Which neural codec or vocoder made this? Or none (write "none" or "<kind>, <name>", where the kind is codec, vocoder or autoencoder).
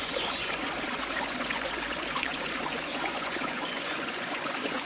vocoder, Vocos